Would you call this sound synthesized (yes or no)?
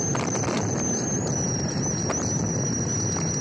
no